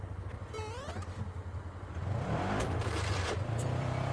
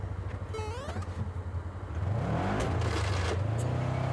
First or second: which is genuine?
second